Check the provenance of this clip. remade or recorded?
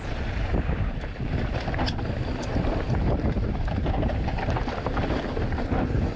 remade